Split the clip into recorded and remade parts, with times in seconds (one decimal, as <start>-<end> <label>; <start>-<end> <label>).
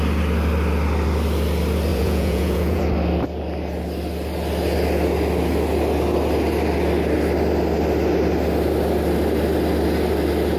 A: 0.0-1.9 recorded; 1.9-2.8 remade; 2.8-10.6 recorded